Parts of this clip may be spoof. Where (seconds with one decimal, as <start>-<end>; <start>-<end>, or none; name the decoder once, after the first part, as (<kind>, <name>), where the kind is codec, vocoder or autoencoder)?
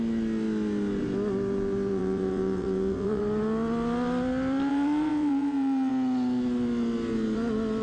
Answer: 1.9-3.2 (vocoder, WaveNeXt); 4.7-5.9